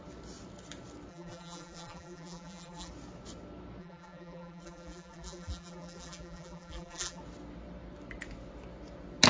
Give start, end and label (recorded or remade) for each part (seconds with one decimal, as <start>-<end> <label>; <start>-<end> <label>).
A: 0.0-1.1 recorded; 1.1-2.9 remade; 2.9-3.8 recorded; 3.8-7.2 remade; 7.2-9.3 recorded